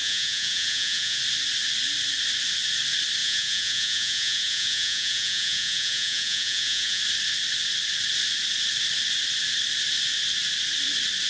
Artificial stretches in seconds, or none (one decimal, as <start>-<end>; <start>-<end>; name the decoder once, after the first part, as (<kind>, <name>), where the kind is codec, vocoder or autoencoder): 0.0-1.2 (vocoder, Vocos); 3.2-7.0